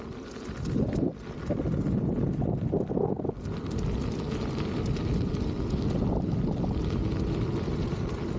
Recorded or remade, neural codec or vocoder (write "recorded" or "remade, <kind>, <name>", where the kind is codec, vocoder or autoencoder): recorded